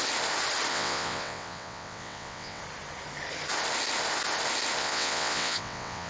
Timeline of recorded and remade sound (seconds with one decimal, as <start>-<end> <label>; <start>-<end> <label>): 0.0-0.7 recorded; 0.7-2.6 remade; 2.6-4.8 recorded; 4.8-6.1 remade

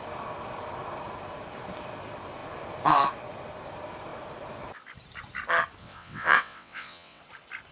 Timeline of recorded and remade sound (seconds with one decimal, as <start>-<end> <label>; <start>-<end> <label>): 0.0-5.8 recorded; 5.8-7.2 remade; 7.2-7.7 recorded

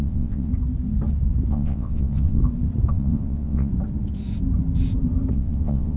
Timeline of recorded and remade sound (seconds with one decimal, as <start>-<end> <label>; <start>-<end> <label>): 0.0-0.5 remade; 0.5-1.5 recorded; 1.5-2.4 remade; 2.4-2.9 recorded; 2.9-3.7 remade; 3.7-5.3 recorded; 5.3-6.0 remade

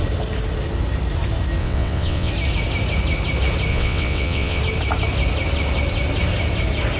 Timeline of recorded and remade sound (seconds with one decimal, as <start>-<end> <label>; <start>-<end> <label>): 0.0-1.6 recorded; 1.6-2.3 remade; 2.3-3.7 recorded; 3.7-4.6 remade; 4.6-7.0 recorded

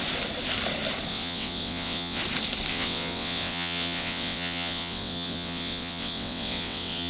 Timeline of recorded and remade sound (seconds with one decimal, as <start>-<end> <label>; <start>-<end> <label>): 0.0-1.1 recorded; 1.1-2.2 remade; 2.2-2.7 recorded; 2.7-7.1 remade

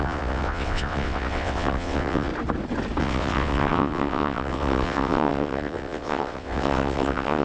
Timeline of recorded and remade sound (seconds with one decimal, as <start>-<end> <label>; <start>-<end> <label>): 0.0-2.3 remade; 2.3-3.0 recorded; 3.0-7.4 remade

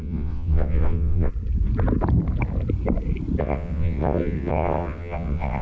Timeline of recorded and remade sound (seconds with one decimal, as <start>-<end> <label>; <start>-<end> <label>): 0.0-1.3 remade; 1.3-3.4 recorded; 3.4-5.6 remade